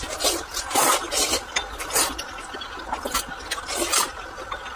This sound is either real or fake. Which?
real